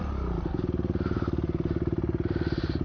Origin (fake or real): real